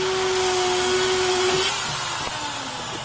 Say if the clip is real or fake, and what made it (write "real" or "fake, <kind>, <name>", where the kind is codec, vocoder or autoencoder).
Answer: real